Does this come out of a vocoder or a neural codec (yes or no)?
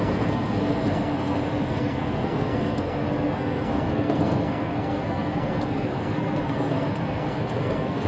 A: yes